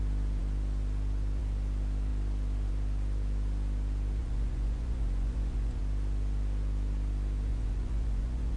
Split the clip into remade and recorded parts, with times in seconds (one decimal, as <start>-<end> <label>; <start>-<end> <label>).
0.0-4.2 recorded; 4.2-5.8 remade; 5.8-7.5 recorded; 7.5-8.6 remade